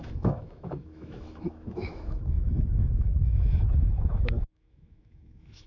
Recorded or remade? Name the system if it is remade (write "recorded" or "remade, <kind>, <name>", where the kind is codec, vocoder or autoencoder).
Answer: remade, autoencoder, DAC-VAE